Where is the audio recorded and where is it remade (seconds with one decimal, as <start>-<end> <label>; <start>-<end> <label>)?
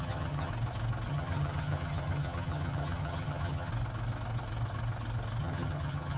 0.0-0.5 remade; 0.5-1.1 recorded; 1.1-3.7 remade; 3.7-5.4 recorded; 5.4-6.2 remade